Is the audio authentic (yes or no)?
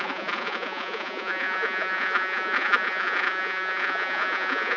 no